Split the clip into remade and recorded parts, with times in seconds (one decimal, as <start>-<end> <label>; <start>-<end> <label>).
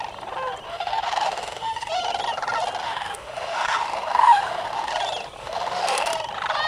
0.0-0.7 recorded; 0.7-1.9 remade; 1.9-2.8 recorded; 2.8-4.9 remade; 4.9-5.4 recorded; 5.4-6.1 remade; 6.1-6.7 recorded